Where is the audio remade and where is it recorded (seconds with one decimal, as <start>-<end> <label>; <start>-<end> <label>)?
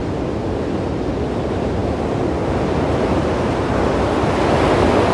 0.0-5.1 recorded